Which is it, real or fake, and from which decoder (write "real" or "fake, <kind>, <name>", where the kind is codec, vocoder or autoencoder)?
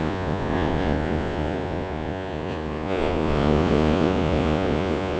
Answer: fake, vocoder, Vocos